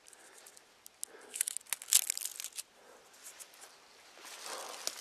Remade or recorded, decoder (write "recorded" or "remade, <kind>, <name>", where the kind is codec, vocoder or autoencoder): recorded